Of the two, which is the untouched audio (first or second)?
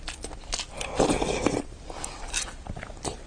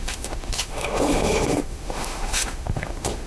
first